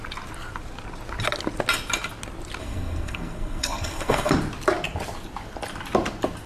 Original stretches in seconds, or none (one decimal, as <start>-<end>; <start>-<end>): 0.0-2.6; 4.3-6.5